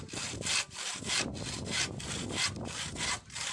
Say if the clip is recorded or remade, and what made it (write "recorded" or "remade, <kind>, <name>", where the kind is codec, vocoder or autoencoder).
recorded